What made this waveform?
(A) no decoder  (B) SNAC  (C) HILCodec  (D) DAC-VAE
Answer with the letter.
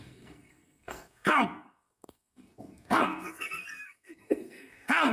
B